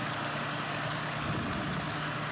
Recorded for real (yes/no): no